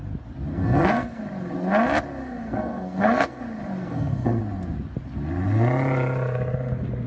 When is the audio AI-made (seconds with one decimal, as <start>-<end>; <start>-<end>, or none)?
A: 0.5-1.2; 2.2-3.4; 3.8-4.4